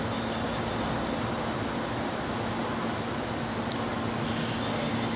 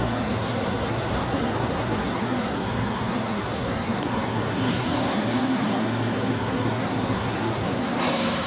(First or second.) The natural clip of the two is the first